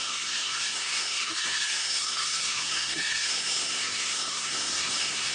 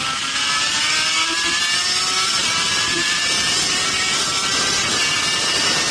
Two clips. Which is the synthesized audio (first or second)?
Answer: first